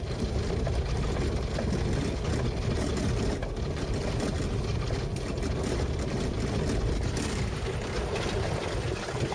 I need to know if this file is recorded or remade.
recorded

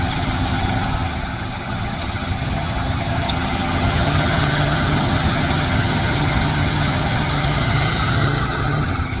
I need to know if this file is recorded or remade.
remade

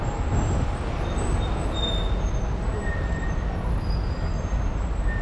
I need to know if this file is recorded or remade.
recorded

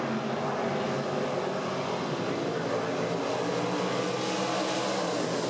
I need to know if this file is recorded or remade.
recorded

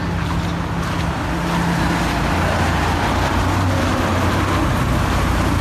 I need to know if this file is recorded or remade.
recorded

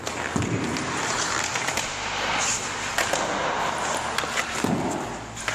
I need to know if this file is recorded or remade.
recorded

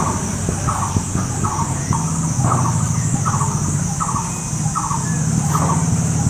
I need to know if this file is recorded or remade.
recorded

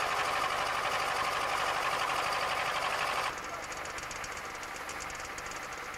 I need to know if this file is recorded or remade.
recorded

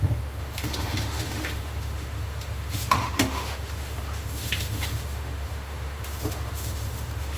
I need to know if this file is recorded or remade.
remade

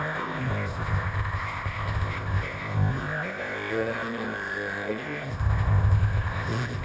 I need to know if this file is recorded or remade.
remade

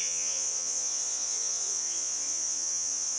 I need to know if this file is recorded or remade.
remade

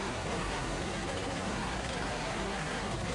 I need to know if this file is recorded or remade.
remade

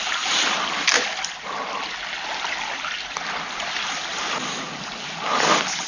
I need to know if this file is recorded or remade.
recorded